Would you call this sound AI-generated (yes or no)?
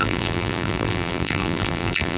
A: yes